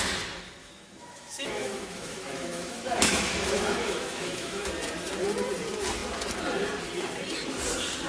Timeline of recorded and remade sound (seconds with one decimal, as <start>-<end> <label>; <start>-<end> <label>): 0.0-0.6 recorded; 0.6-4.7 remade; 4.7-8.1 recorded

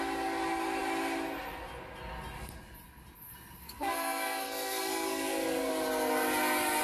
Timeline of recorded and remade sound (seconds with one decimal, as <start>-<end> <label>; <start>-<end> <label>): 0.0-3.6 recorded; 3.6-5.7 remade; 5.7-6.8 recorded

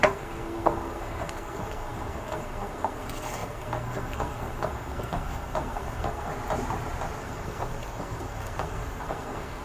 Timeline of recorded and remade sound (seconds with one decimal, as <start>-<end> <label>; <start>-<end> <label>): 0.0-6.3 remade; 6.3-7.2 recorded; 7.2-9.6 remade

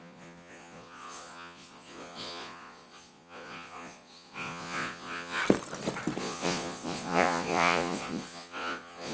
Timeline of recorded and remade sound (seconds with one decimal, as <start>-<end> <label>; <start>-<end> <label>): 0.0-5.4 remade; 5.4-6.2 recorded; 6.2-9.1 remade

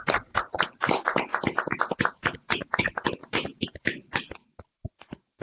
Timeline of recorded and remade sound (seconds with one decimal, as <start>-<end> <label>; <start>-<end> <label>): 0.0-1.3 remade; 1.3-2.1 recorded; 2.1-5.4 remade

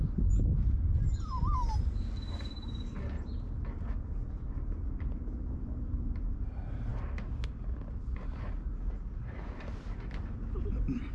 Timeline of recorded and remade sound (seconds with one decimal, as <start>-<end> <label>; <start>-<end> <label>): 0.0-11.1 recorded

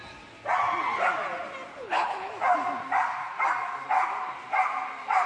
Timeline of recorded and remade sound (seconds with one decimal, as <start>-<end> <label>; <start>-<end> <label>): 0.0-1.7 recorded; 1.7-2.3 remade; 2.3-5.3 recorded